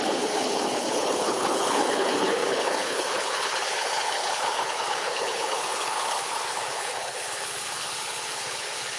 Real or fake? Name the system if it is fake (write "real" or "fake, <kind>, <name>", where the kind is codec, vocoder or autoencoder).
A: fake, codec, HILCodec